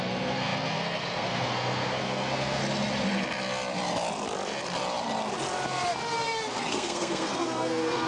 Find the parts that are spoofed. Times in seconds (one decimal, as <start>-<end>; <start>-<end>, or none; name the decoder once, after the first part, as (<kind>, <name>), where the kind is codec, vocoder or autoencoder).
0.0-2.6 (codec, SNAC); 6.7-8.1